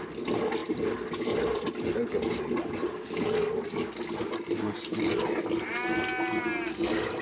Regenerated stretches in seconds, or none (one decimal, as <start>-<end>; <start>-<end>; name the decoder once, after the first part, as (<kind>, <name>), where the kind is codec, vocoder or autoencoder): none